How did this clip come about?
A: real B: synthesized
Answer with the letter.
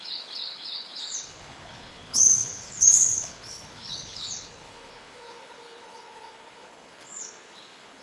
B